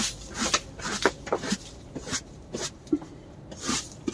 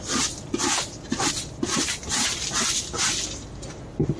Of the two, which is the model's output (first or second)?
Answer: first